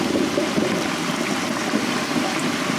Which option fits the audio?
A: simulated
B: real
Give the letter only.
B